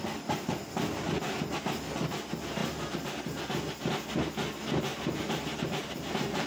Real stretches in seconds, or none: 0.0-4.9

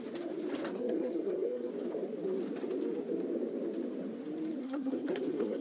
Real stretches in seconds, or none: 0.0-0.7; 1.7-4.6

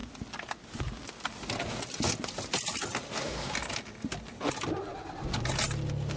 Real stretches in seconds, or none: 0.0-6.2

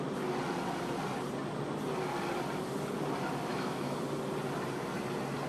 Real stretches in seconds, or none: 0.0-3.5; 4.0-5.5

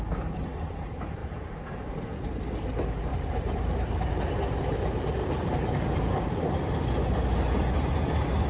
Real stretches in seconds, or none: 0.0-3.1; 4.2-5.2; 6.4-8.5

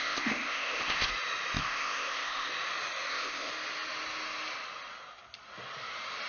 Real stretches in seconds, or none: 1.1-1.6; 2.5-3.1; 3.5-6.3